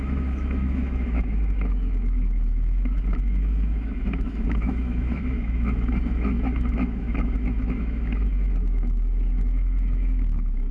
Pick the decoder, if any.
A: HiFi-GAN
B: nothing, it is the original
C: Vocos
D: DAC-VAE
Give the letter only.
D